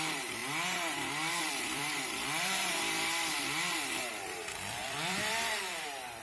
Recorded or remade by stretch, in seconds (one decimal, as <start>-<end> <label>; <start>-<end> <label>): 0.0-6.2 remade